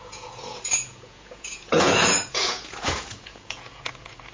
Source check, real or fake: fake